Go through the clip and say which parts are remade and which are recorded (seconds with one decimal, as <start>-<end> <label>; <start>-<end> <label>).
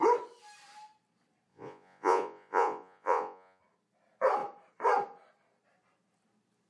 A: 0.0-1.5 recorded; 1.5-3.6 remade; 3.6-6.7 recorded